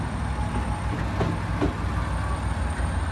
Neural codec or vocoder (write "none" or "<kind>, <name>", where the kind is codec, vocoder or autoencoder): none